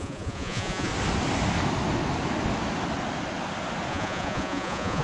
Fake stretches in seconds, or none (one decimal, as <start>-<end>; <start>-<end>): 0.0-0.9; 3.9-5.0